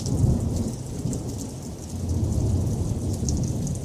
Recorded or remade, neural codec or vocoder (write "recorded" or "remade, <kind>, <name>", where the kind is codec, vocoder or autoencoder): recorded